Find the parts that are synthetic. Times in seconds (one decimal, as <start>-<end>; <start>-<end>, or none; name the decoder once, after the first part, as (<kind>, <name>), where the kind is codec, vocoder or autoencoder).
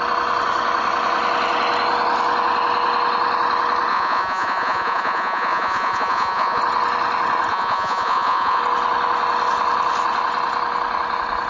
3.9-6.6 (vocoder, Vocos); 7.5-8.6